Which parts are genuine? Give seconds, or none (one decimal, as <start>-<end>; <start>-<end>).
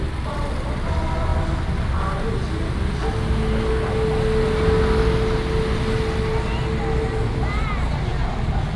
0.0-8.8